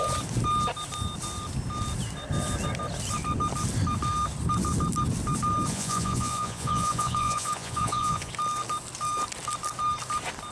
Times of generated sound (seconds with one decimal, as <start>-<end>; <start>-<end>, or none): 5.7-8.3